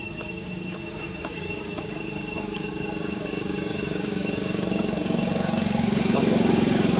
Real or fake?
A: fake